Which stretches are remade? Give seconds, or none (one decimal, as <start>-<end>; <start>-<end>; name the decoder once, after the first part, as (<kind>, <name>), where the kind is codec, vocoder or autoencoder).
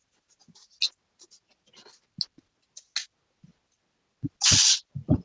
none